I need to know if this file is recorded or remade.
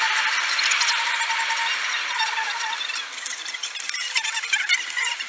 recorded